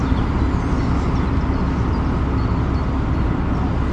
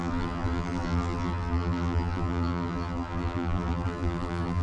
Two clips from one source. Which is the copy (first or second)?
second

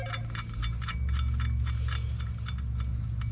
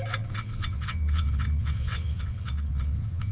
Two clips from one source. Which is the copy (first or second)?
second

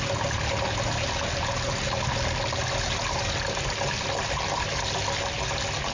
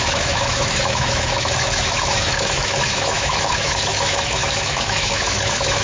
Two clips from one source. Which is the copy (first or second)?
second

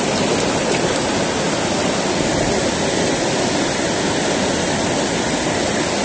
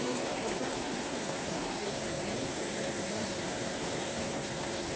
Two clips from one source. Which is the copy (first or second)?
second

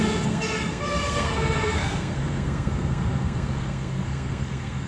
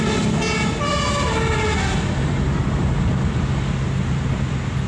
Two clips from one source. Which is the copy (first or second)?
first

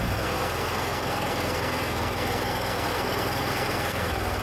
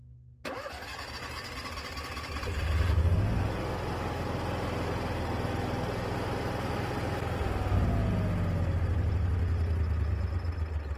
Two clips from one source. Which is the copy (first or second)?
first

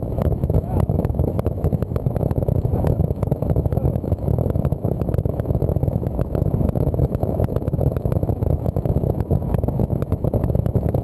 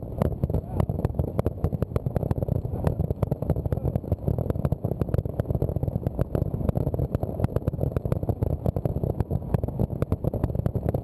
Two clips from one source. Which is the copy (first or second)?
first